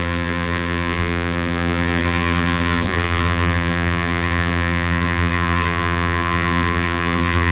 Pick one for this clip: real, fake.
fake